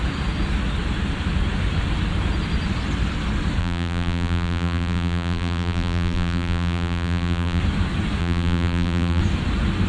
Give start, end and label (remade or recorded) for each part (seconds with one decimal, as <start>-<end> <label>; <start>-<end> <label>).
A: 0.0-3.6 recorded; 3.6-7.6 remade; 7.6-8.2 recorded; 8.2-9.2 remade; 9.2-9.9 recorded